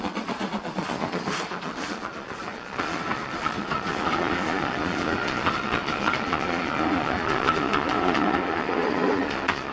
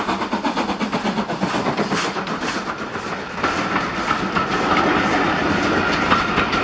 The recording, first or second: second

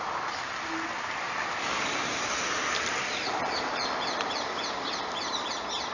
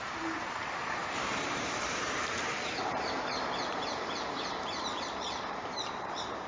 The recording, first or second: first